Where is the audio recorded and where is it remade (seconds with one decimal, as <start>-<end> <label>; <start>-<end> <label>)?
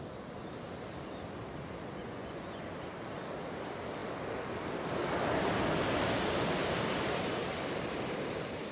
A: 0.0-2.0 recorded; 2.0-2.6 remade; 2.6-8.7 recorded